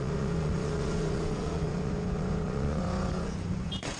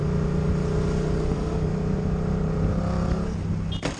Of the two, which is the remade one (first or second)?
first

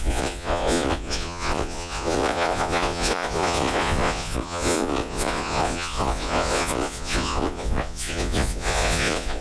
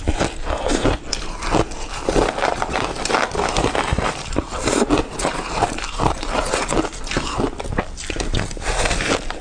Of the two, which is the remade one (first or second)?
first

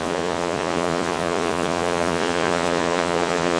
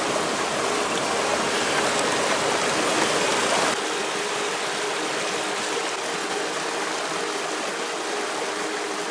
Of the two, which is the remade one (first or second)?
first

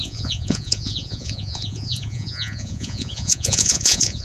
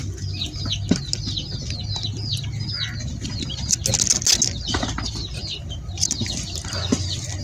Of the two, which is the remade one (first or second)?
first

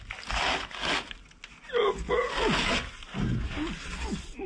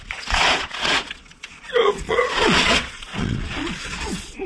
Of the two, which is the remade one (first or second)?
second